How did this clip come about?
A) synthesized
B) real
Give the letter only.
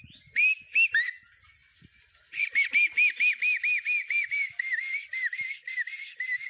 B